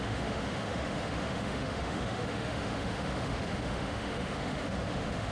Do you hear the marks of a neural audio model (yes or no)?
yes